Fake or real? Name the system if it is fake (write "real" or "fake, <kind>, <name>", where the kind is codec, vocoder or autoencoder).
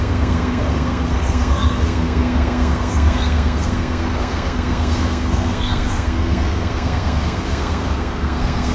fake, codec, SNAC